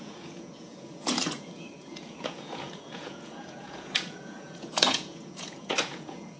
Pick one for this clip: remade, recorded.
remade